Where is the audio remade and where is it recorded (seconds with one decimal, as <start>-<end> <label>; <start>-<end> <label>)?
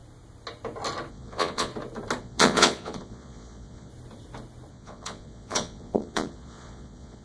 0.0-1.1 recorded; 1.1-1.7 remade; 1.7-2.2 recorded; 2.2-3.9 remade; 3.9-4.7 recorded; 4.7-7.2 remade